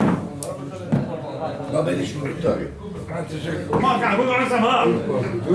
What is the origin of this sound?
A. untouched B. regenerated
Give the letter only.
A